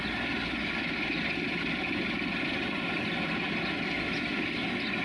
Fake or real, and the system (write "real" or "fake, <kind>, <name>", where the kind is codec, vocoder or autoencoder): real